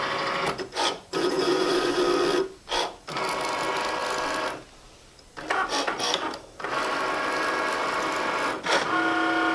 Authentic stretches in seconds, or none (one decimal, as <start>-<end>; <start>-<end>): 0.0-0.7; 2.0-9.5